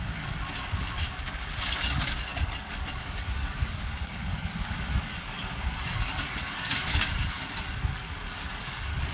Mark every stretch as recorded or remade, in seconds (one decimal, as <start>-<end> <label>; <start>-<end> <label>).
0.0-9.1 remade